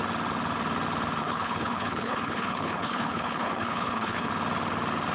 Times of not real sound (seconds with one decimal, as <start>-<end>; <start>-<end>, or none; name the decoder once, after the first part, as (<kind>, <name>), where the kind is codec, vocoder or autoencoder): 1.2-4.3 (codec, HILCodec)